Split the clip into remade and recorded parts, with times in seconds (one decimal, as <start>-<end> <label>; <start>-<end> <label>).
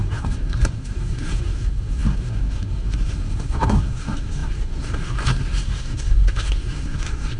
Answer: 0.0-7.4 remade